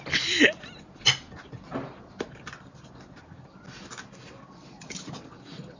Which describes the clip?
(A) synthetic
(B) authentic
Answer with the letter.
B